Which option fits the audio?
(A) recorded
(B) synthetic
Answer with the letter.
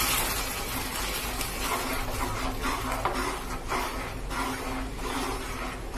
A